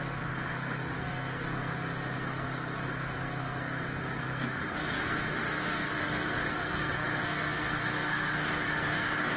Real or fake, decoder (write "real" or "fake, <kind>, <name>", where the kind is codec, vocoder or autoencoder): fake, codec, SNAC